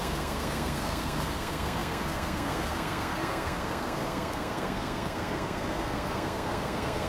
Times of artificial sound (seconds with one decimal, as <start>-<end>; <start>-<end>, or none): 0.0-7.1